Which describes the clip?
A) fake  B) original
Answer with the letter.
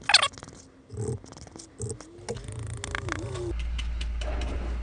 B